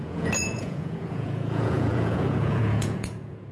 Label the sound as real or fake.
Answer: fake